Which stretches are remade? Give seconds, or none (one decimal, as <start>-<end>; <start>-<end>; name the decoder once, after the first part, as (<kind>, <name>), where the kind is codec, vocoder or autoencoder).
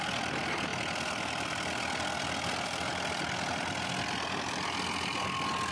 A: none